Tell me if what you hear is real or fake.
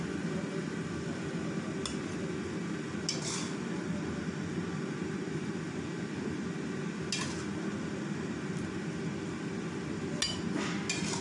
real